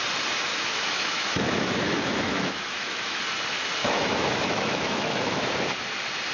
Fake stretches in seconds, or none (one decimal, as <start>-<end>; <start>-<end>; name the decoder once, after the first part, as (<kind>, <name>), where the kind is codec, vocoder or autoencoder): 0.5-3.2 (autoencoder, DAC-VAE); 3.8-5.5